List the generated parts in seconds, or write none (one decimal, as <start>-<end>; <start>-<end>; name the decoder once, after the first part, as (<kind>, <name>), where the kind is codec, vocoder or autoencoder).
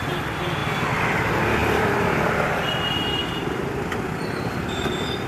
none